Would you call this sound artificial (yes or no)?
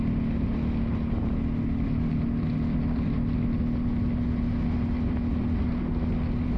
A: no